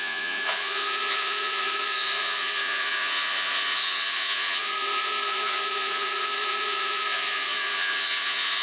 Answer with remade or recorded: remade